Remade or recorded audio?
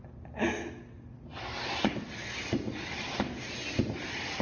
recorded